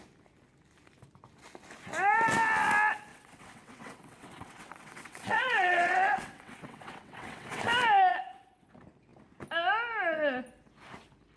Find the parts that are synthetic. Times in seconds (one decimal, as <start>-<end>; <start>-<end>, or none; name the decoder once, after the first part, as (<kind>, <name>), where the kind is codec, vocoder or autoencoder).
3.1-7.6 (vocoder, WaveNeXt); 8.1-8.7